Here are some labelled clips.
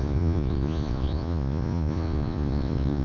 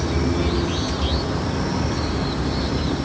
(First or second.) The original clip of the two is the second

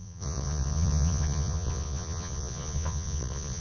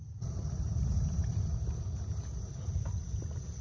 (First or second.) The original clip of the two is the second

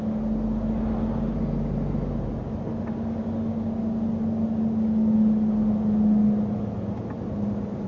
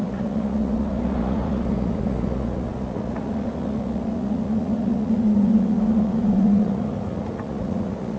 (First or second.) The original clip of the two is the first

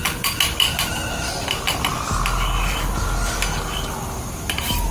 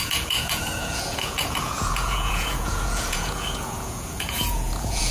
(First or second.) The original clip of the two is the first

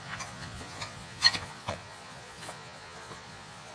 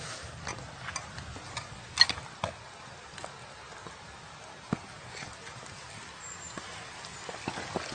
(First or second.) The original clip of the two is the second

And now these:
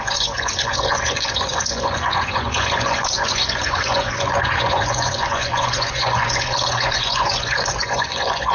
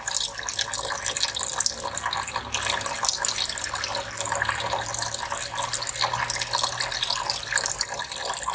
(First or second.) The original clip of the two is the second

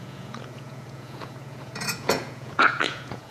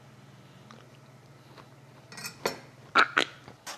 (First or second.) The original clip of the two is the second